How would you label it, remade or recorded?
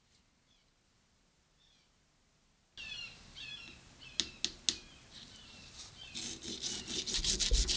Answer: recorded